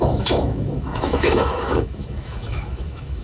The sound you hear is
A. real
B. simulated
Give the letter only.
B